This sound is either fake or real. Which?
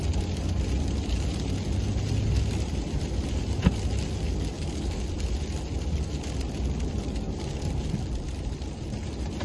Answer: real